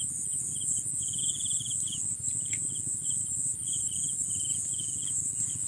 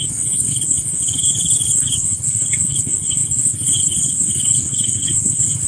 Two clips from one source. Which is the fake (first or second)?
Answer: second